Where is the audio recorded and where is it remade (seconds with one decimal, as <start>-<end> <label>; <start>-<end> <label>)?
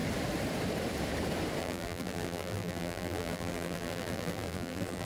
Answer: 0.0-1.6 recorded; 1.6-5.1 remade